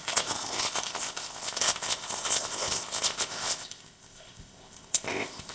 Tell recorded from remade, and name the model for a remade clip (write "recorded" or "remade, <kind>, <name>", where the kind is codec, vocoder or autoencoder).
remade, codec, ZipCodec